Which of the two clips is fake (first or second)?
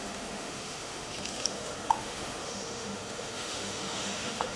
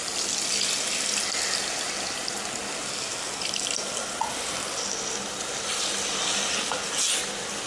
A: first